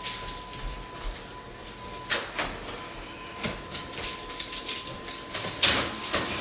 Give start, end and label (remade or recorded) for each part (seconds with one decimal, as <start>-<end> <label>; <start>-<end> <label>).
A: 0.0-6.4 recorded